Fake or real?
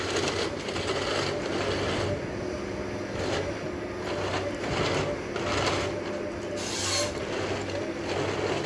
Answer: real